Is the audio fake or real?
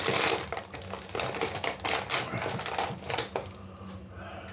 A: real